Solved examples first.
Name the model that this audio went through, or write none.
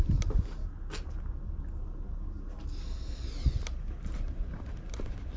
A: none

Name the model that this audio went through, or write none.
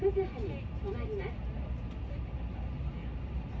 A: none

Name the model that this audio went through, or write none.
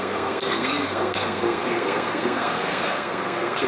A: codec, SNAC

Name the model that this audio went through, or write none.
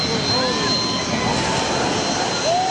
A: none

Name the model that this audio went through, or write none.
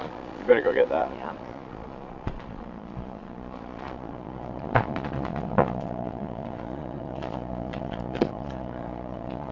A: vocoder, Vocos